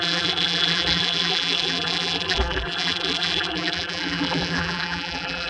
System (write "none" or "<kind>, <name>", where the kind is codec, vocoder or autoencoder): vocoder, BigVGAN v2